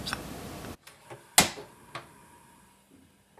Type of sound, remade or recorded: recorded